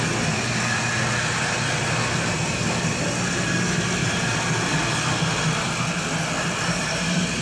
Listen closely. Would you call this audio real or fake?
real